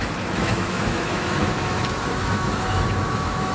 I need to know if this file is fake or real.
fake